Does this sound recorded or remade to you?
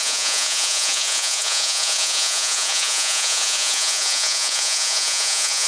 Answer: remade